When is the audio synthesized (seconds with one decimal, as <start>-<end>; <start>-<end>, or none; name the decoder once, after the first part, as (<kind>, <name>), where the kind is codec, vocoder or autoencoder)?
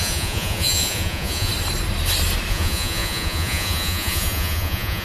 0.0-1.5 (vocoder, Vocos); 2.5-5.0